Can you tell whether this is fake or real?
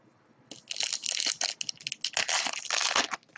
real